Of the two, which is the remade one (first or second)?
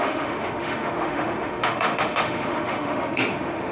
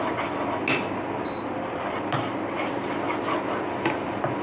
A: first